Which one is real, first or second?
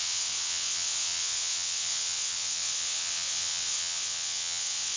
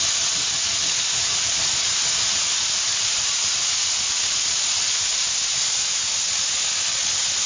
second